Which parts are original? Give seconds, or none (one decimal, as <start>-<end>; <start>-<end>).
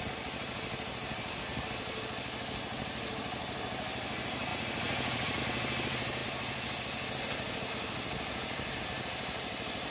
0.0-4.5; 5.4-9.9